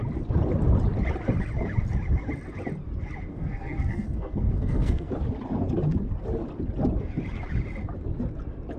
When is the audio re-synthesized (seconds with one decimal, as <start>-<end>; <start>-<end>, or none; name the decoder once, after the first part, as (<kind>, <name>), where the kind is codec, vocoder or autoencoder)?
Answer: 3.3-5.1 (codec, SNAC)

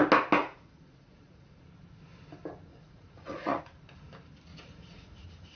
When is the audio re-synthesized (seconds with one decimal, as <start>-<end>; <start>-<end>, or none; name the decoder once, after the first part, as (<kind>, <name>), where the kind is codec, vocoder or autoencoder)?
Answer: 0.4-1.6 (vocoder, Vocos); 2.7-3.6; 4.5-5.6

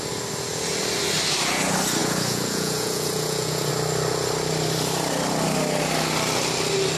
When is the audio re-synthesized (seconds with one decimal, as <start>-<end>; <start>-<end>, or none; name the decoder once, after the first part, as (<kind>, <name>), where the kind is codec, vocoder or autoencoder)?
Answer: 2.0-3.7 (vocoder, Vocos)

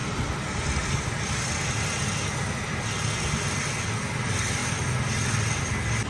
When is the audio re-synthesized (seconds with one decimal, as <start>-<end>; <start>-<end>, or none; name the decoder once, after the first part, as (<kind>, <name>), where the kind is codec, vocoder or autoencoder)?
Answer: none

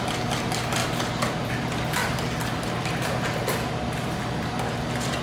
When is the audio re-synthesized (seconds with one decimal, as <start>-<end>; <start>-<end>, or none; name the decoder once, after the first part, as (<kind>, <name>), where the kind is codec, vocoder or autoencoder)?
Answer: 0.8-1.5 (vocoder, BigVGAN v2)